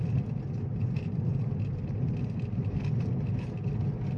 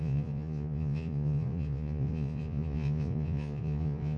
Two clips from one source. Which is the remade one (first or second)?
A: second